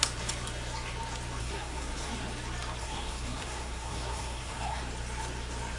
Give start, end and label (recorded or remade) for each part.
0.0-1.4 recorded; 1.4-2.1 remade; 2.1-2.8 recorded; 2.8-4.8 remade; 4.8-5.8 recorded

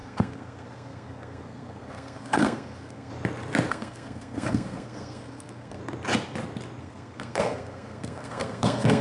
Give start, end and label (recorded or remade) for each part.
0.0-3.1 remade; 3.1-3.7 recorded; 3.7-5.8 remade; 5.8-6.8 recorded; 6.8-9.0 remade

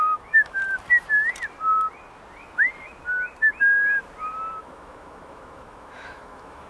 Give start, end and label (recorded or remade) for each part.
0.0-0.6 remade; 0.6-4.6 recorded; 4.6-6.7 remade

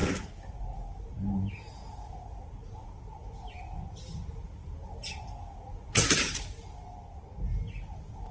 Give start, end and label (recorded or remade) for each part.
0.0-8.3 recorded

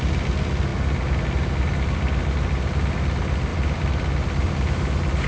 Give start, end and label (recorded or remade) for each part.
0.0-5.3 recorded

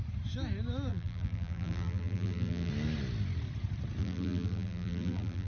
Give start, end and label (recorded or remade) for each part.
0.0-0.9 recorded; 0.9-2.7 remade; 2.7-4.0 recorded; 4.0-5.5 remade

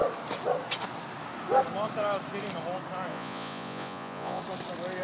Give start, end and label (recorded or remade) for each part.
0.0-3.1 recorded; 3.1-4.4 remade; 4.4-5.0 recorded